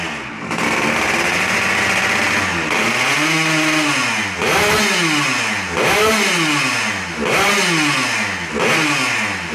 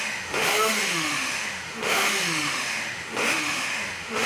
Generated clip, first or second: second